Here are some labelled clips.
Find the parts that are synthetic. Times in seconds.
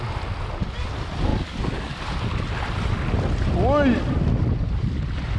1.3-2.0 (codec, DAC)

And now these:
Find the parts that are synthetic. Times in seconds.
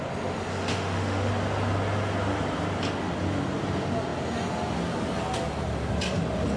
0.5-1.3 (autoencoder, DAC-VAE)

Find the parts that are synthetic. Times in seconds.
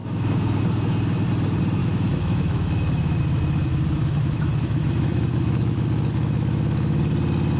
0.0-0.6 (autoencoder, DAC-VAE); 1.8-3.2; 3.7-7.0